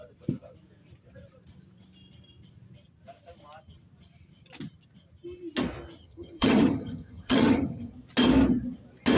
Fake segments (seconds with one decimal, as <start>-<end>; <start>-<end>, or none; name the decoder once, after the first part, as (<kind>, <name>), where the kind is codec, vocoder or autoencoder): 6.0-7.9 (vocoder, HiFi-GAN)